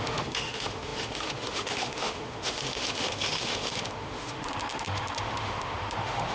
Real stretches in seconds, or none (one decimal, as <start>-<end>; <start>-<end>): none